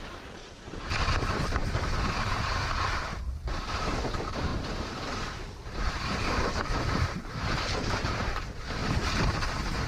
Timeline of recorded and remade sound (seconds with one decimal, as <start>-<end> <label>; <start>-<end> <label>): 0.0-4.5 remade; 4.5-5.8 recorded; 5.8-8.8 remade; 8.8-9.9 recorded